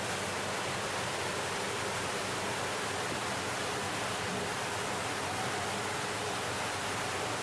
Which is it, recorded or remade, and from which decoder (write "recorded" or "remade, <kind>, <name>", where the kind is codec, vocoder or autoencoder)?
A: recorded